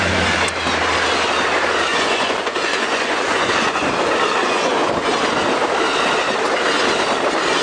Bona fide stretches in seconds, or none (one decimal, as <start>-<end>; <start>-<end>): 0.0-1.9; 3.9-4.4; 5.1-7.6